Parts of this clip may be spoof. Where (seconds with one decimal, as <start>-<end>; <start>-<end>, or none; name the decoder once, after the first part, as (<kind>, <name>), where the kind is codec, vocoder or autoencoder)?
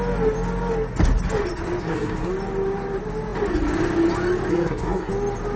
1.8-2.3 (codec, SNAC); 4.5-5.1